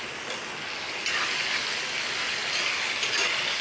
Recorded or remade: recorded